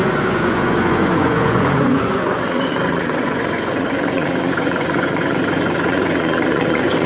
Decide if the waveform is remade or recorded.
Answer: remade